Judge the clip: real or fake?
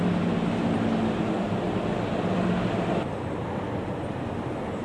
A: real